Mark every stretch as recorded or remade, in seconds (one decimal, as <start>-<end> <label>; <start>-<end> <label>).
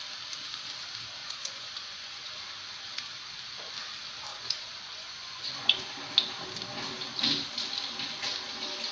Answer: 0.0-1.2 recorded; 1.2-2.3 remade; 2.3-4.3 recorded; 4.3-5.9 remade; 5.9-8.9 recorded